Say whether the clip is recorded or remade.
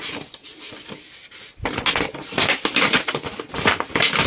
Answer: recorded